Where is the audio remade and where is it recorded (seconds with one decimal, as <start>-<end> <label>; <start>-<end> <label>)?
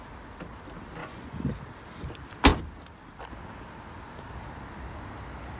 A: 0.0-1.0 recorded; 1.0-1.5 remade; 1.5-5.6 recorded